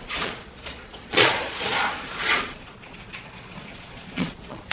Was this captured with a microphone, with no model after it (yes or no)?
no